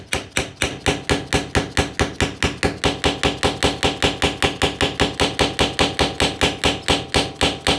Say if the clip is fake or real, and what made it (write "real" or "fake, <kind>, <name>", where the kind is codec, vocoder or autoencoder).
real